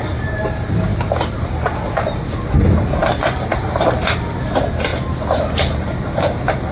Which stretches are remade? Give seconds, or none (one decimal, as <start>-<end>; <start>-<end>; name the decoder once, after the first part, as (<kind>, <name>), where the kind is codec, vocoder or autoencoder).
0.0-6.7 (vocoder, BigVGAN v2)